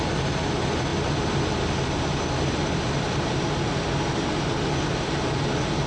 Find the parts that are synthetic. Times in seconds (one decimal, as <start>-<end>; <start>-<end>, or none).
none